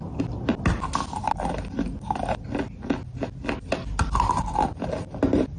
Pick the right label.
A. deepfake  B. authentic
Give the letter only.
B